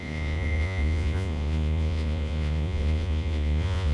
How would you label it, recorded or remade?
remade